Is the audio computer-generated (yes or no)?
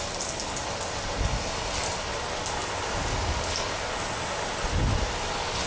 no